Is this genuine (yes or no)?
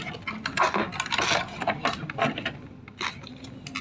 yes